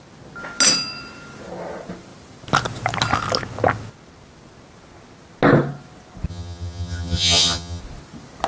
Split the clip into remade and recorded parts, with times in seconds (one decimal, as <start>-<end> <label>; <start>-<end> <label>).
0.0-6.3 recorded; 6.3-7.8 remade; 7.8-8.5 recorded